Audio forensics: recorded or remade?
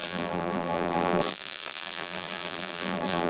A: remade